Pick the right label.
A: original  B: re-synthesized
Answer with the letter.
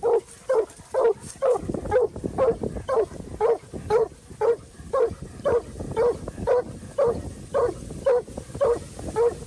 A